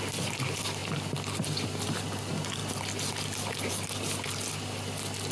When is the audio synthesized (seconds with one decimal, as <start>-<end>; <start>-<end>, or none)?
none